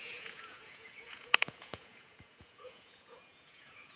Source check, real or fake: fake